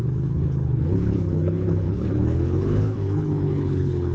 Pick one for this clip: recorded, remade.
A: remade